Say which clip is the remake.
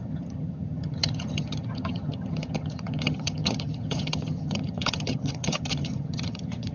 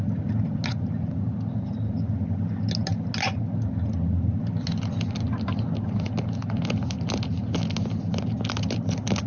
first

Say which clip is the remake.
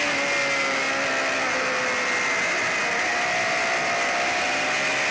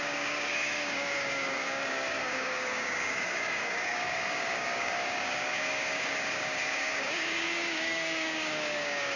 second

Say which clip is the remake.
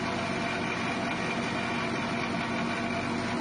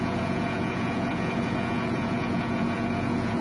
second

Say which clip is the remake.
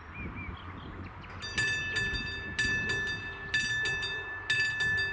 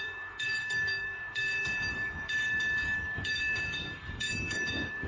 second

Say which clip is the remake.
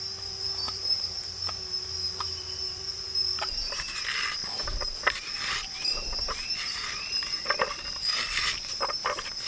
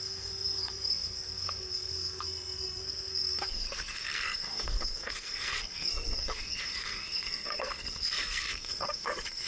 second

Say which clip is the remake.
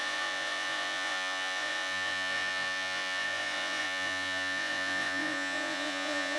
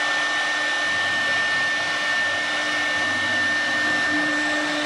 first